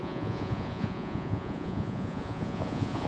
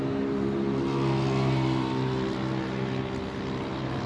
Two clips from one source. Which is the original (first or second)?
second